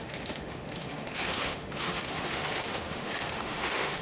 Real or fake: fake